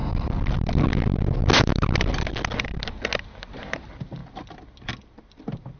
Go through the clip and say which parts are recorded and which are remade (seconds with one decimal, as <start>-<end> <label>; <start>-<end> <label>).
0.0-5.8 recorded